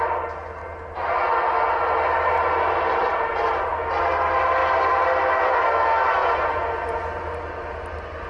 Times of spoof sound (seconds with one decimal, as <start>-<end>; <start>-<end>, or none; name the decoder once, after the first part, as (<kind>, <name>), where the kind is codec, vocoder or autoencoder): 6.2-6.8 (vocoder, Vocos)